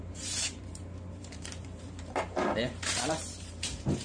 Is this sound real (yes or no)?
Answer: no